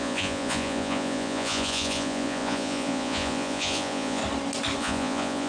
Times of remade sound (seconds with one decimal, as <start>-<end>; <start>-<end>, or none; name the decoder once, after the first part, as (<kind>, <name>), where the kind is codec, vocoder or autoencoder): 0.0-4.2 (vocoder, Vocos); 4.8-5.5